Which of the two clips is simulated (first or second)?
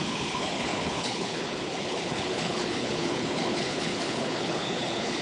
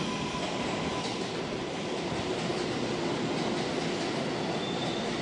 first